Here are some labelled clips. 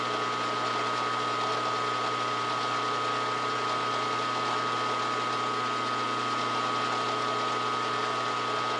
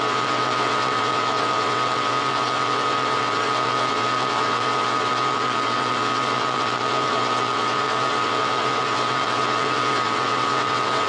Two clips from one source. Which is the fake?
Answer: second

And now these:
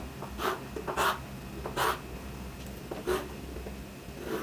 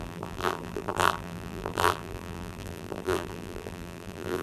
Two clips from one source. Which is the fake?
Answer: second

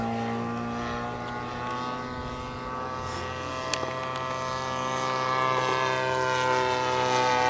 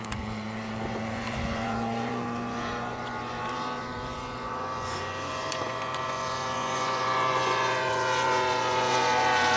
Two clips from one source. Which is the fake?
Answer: second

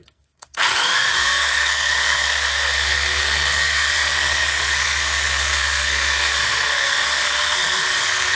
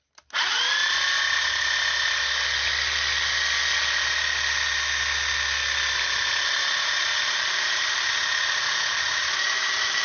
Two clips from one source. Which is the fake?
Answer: first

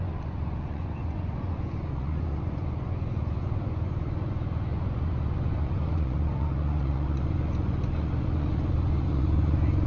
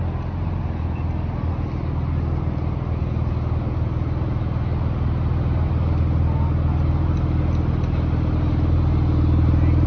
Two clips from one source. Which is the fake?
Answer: first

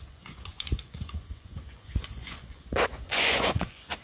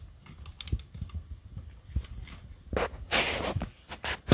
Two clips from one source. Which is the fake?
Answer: first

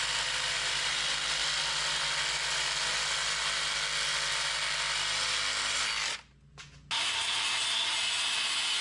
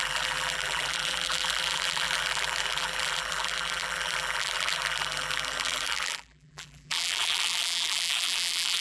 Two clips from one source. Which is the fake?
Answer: second